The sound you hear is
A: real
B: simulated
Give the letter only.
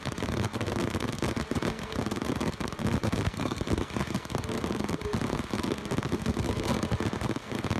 B